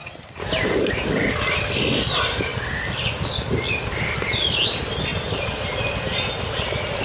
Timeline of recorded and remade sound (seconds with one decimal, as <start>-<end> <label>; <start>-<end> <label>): 0.0-7.0 recorded